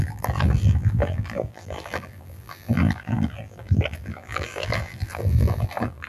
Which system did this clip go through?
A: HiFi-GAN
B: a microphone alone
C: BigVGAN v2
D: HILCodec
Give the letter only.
C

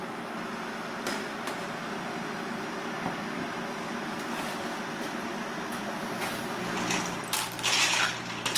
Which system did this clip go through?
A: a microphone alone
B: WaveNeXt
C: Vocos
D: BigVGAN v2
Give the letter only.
A